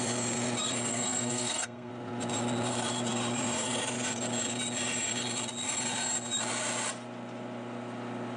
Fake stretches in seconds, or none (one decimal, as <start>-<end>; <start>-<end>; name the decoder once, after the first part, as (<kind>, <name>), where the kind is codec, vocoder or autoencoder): 0.9-1.9 (codec, SNAC)